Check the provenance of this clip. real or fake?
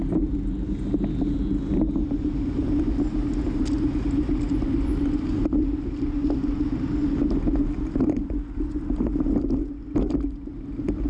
real